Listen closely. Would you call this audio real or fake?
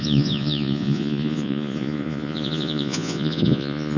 fake